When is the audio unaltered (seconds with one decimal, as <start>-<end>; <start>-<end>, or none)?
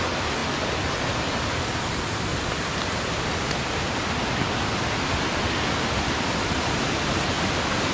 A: 0.0-7.9